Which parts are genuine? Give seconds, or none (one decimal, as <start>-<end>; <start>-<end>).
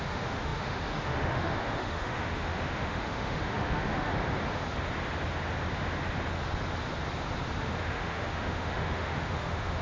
4.1-7.6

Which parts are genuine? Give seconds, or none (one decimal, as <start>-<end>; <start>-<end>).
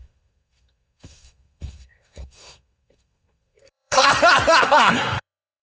4.1-4.6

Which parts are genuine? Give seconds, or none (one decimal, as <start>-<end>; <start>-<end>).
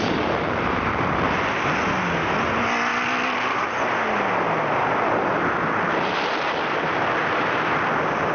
0.0-8.3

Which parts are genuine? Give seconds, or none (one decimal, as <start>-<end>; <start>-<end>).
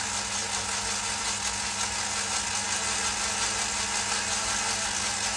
0.0-5.4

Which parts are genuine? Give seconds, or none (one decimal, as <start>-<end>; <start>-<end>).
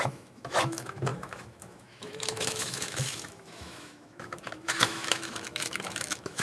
none